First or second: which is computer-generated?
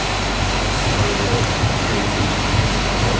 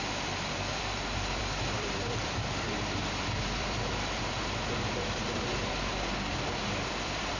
second